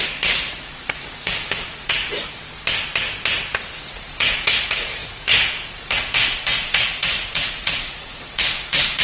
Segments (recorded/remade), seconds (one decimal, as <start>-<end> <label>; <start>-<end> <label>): 0.0-2.4 remade; 2.4-3.6 recorded; 3.6-9.0 remade